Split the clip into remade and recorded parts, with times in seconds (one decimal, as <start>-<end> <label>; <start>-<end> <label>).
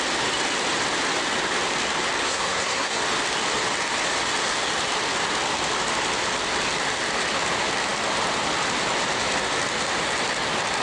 0.0-2.2 recorded; 2.2-3.0 remade; 3.0-10.8 recorded